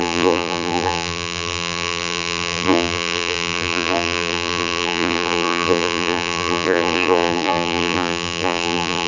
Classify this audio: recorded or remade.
remade